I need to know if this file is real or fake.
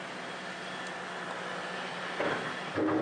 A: real